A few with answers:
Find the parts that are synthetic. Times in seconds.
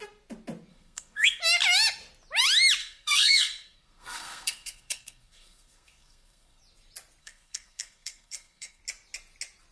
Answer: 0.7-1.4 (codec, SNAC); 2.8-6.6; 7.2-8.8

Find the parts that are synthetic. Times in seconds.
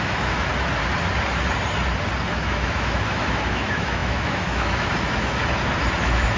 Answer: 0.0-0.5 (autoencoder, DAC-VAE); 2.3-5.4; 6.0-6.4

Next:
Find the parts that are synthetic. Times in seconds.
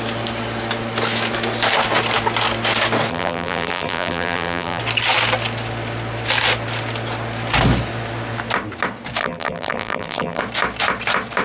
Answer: 3.1-4.8 (vocoder, BigVGAN v2); 9.2-10.4